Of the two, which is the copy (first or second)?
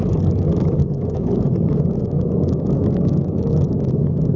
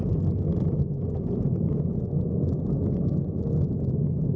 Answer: first